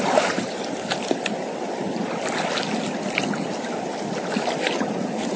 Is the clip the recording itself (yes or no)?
no